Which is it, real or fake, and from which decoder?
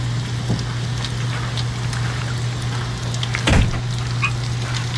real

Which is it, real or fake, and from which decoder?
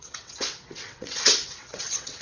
fake, vocoder, WaveNeXt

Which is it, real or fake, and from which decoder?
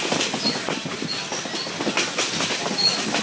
real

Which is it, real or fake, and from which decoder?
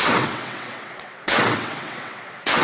fake, vocoder, WaveNeXt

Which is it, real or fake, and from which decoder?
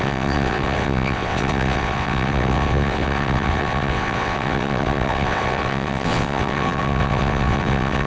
fake, vocoder, WaveNeXt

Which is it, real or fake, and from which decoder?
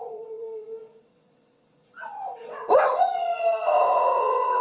fake, vocoder, WaveNeXt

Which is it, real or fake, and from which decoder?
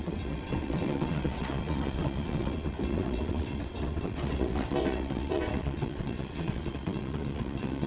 fake, vocoder, WaveNeXt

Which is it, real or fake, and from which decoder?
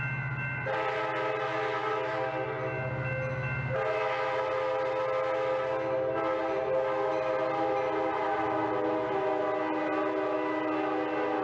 real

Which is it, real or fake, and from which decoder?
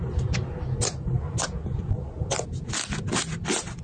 real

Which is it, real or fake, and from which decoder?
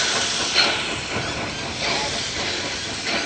real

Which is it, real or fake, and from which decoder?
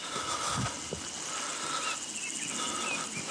real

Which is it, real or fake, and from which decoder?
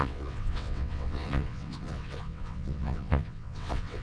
fake, vocoder, WaveNeXt